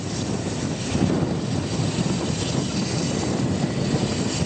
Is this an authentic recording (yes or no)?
yes